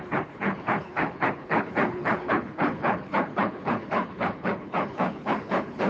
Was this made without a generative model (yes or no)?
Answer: no